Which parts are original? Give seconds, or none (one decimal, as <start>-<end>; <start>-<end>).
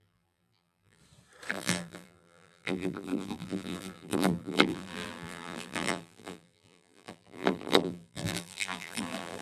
1.0-1.5